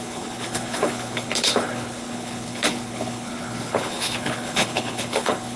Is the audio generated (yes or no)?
yes